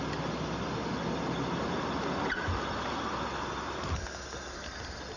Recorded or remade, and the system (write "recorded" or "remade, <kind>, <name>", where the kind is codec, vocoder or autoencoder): recorded